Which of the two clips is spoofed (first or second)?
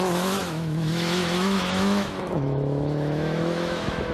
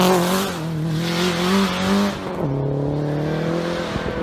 first